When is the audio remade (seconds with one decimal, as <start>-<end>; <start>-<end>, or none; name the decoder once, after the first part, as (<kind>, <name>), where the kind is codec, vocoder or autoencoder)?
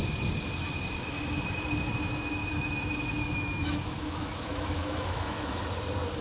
1.9-5.6 (autoencoder, DAC-VAE)